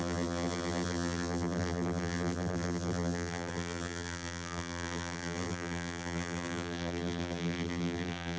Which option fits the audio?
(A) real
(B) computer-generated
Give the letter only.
B